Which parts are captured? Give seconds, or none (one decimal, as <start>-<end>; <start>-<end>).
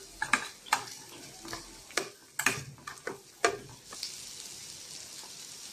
0.0-5.7